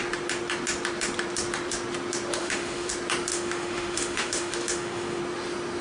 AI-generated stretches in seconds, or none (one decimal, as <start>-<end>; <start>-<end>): 2.4-2.9; 3.3-5.2